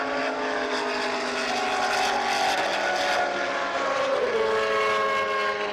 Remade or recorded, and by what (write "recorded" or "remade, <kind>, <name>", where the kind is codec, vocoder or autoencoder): recorded